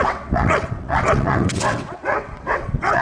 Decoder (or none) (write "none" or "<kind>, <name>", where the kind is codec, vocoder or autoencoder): vocoder, WaveNeXt